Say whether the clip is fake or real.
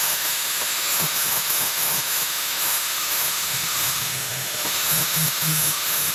fake